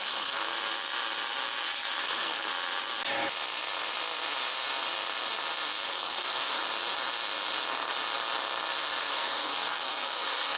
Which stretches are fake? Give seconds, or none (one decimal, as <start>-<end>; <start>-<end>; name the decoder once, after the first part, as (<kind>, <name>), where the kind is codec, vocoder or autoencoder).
0.0-0.5 (codec, SNAC); 2.0-2.5; 5.9-6.6; 9.0-10.6